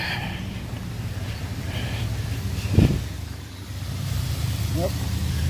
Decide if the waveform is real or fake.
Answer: fake